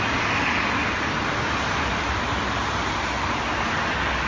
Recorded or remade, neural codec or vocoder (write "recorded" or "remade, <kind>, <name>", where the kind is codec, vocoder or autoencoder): recorded